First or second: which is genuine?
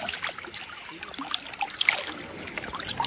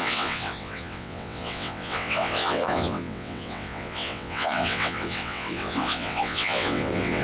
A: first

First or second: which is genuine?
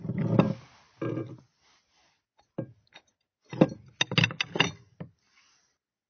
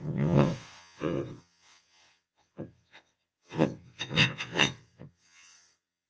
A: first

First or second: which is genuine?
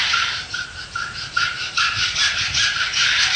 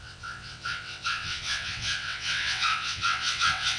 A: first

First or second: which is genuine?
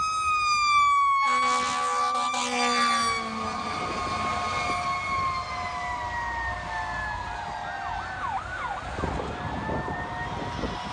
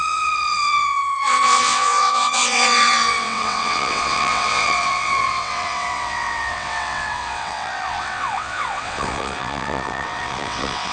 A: first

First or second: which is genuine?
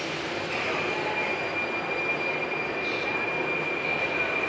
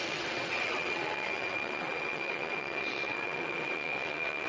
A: first